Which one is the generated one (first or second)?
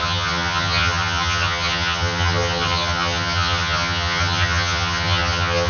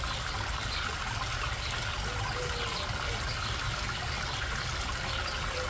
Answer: first